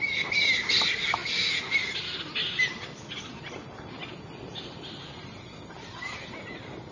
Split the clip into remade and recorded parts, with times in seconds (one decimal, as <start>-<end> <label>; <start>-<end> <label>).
0.0-6.9 recorded